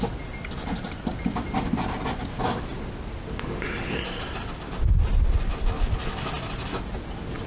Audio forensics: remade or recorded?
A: recorded